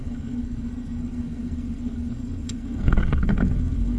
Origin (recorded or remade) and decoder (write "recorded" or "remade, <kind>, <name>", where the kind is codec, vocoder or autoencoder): remade, codec, SNAC